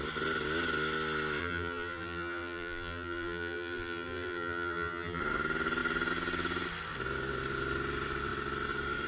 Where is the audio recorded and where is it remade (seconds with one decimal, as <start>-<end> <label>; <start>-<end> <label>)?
0.0-1.4 recorded; 1.4-5.2 remade; 5.2-9.1 recorded